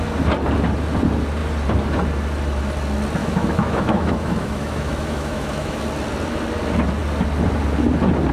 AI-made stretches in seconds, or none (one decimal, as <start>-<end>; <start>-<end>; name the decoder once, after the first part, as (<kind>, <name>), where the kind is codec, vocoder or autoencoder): 3.2-5.8 (autoencoder, DAC-VAE)